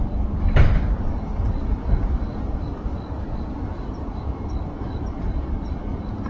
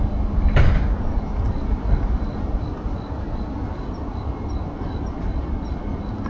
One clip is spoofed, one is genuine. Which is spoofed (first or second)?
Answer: first